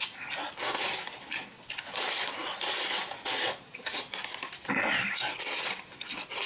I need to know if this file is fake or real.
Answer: fake